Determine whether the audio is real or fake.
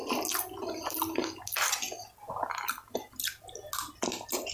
real